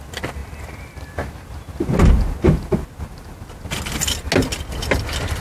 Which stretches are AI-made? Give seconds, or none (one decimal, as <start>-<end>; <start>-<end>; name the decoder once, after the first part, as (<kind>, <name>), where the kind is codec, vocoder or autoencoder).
none